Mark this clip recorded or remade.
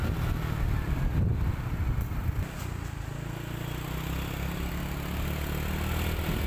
recorded